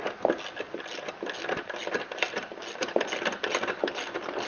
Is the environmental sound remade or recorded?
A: recorded